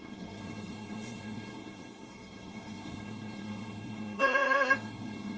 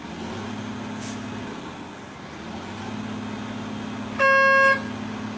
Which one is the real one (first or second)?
second